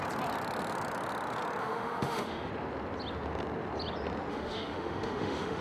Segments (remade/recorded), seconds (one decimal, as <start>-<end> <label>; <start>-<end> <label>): 0.0-1.6 recorded; 1.6-2.5 remade; 2.5-4.3 recorded; 4.3-5.6 remade

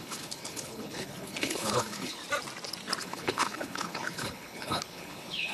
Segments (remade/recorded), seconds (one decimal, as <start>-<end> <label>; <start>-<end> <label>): 0.0-2.2 remade; 2.2-3.0 recorded; 3.0-5.5 remade

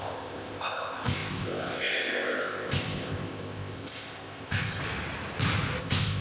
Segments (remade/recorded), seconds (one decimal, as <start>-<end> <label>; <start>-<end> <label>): 0.0-4.8 remade; 4.8-5.8 recorded; 5.8-6.2 remade

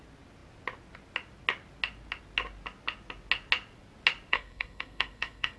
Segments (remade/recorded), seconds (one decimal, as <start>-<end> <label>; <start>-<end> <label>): 0.0-4.3 recorded; 4.3-5.6 remade

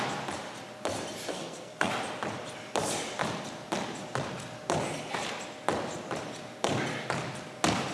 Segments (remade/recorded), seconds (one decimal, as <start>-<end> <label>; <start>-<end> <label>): 0.0-1.3 recorded; 1.3-1.9 remade; 1.9-7.9 recorded